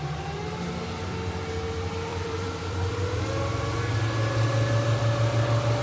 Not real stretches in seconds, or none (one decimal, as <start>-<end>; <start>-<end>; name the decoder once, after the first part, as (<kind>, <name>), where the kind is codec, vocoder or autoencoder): 2.1-3.2 (vocoder, BigVGAN v2)